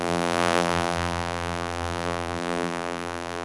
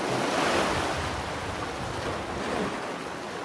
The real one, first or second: second